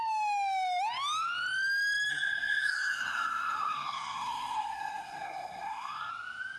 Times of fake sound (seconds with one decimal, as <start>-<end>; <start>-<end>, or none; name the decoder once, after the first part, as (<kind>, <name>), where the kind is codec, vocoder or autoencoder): 2.1-6.1 (codec, SNAC)